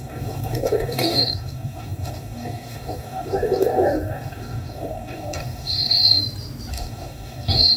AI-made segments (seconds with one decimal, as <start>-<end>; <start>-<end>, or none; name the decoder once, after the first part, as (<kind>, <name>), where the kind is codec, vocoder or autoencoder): 0.0-6.2 (codec, DAC); 6.7-7.8